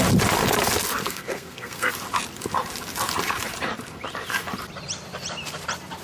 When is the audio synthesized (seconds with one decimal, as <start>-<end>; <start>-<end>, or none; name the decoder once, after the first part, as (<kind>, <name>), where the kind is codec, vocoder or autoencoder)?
1.0-1.9 (codec, SNAC)

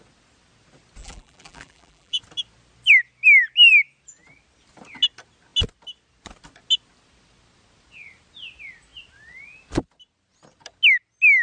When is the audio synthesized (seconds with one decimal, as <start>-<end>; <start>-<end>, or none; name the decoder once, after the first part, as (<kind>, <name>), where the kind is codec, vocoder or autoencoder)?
1.0-2.2 (vocoder, BigVGAN v2)

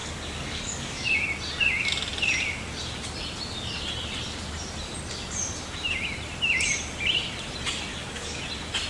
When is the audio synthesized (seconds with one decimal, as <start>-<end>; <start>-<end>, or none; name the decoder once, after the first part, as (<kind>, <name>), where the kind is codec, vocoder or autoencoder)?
0.0-1.2 (codec, DAC); 7.9-8.4

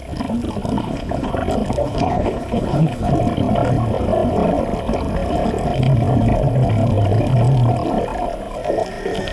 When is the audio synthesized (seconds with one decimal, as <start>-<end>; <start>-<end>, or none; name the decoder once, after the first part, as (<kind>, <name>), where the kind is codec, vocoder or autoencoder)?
0.8-1.3 (codec, HILCodec); 1.8-3.1

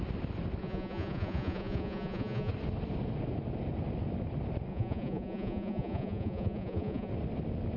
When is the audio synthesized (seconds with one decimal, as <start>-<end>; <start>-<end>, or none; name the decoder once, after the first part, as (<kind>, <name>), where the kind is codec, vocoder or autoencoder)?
0.6-2.5 (vocoder, Vocos); 4.7-7.1

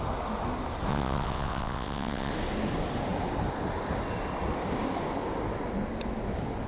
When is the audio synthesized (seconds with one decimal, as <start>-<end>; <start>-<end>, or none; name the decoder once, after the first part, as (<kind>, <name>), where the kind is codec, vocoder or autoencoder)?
0.9-2.3 (vocoder, WaveNeXt)

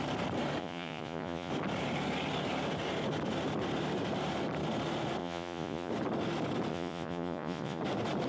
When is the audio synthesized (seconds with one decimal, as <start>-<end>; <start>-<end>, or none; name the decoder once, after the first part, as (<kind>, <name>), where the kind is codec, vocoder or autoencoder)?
0.6-1.5 (vocoder, Vocos); 5.2-5.9; 6.7-7.8